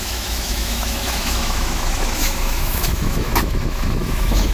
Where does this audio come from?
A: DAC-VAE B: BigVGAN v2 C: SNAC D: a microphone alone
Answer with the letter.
A